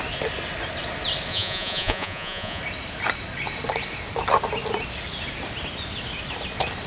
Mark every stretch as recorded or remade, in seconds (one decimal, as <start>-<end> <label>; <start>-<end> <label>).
0.0-1.3 recorded; 1.3-2.6 remade; 2.6-6.9 recorded

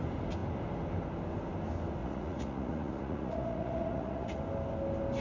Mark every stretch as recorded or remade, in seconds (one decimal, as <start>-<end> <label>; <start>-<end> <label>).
0.0-2.0 recorded; 2.0-4.4 remade; 4.4-5.2 recorded

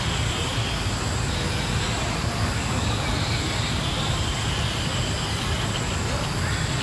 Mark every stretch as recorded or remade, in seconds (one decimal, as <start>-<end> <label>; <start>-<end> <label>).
0.0-6.8 recorded

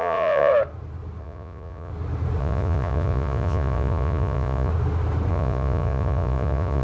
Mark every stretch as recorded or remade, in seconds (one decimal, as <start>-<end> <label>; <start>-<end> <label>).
0.0-0.5 remade; 0.5-1.2 recorded; 1.2-1.9 remade; 1.9-2.4 recorded; 2.4-4.7 remade; 4.7-5.3 recorded; 5.3-6.8 remade

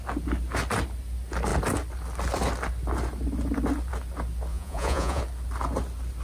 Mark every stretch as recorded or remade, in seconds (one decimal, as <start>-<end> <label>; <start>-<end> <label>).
0.0-4.5 recorded; 4.5-5.2 remade; 5.2-6.2 recorded

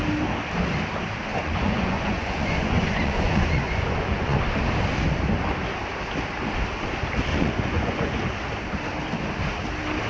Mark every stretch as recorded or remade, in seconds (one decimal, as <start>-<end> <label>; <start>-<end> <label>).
0.0-1.3 recorded; 1.3-4.4 remade; 4.4-7.3 recorded; 7.3-8.1 remade; 8.1-10.1 recorded

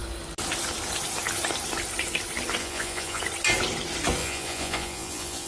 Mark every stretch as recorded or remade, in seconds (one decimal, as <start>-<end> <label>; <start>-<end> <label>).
0.0-2.6 recorded; 2.6-3.2 remade; 3.2-4.2 recorded; 4.2-5.5 remade